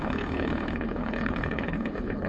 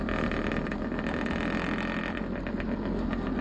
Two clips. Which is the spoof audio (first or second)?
first